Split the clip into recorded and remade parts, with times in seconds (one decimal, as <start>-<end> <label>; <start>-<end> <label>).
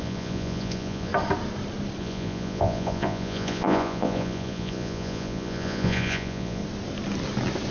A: 0.0-1.1 remade; 1.1-2.0 recorded; 2.0-6.6 remade; 6.6-7.7 recorded